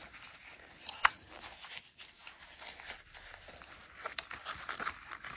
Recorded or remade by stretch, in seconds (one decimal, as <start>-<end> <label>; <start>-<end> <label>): 0.0-0.8 recorded; 0.8-1.3 remade; 1.3-5.4 recorded

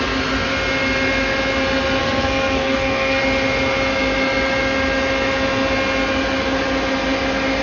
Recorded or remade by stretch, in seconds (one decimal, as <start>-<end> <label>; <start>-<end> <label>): 0.0-2.0 recorded; 2.0-3.2 remade; 3.2-7.6 recorded

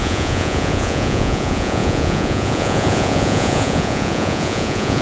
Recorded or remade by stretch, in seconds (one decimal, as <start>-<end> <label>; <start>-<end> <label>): 0.0-5.0 remade

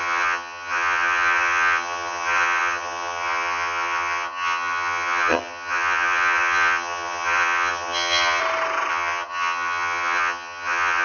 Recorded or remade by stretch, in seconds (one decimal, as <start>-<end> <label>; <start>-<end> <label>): 0.0-8.4 remade; 8.4-8.9 recorded; 8.9-11.0 remade

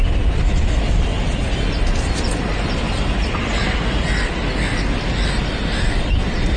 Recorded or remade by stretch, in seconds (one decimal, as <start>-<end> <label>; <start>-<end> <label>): 0.0-6.6 recorded